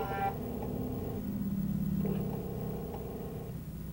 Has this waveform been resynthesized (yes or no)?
no